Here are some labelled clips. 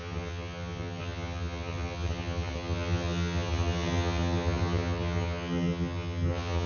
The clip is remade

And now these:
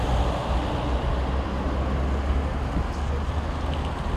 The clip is recorded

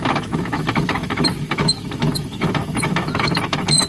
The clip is remade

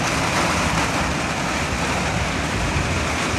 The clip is remade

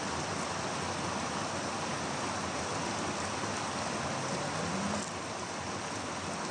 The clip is recorded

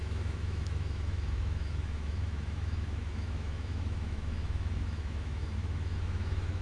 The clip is remade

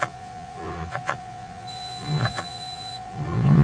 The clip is remade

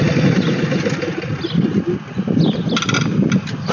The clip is recorded